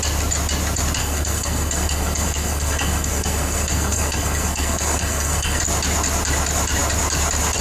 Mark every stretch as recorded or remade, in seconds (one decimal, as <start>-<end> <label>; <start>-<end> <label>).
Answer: 0.0-1.0 recorded; 1.0-5.6 remade; 5.6-7.6 recorded